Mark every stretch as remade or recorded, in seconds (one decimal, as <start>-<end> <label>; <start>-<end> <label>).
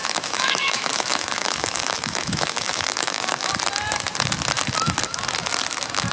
0.0-3.5 remade; 3.5-6.1 recorded